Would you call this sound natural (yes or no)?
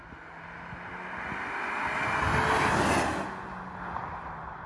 yes